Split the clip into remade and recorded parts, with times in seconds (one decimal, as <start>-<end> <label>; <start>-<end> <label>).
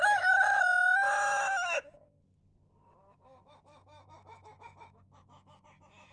0.0-6.1 remade